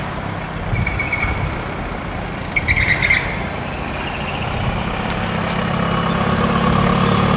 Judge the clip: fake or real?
real